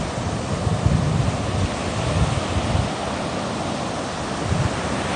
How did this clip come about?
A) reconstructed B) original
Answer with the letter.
B